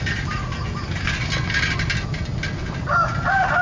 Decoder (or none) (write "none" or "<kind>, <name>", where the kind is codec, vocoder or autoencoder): none